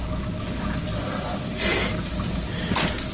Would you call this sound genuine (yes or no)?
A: yes